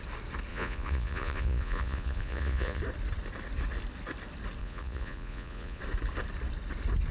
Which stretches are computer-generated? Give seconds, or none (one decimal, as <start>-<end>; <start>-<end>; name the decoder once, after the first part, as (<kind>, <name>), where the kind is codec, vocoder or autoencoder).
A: 0.5-2.8 (vocoder, Vocos); 4.6-5.8